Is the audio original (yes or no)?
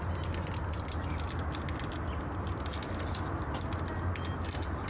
yes